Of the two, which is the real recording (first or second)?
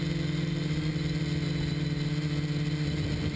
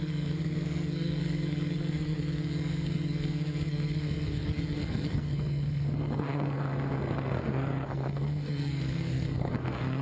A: first